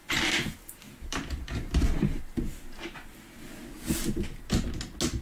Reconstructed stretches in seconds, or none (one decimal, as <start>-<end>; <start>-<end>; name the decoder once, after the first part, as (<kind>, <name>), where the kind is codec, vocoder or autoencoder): 0.0-2.2 (vocoder, BigVGAN v2)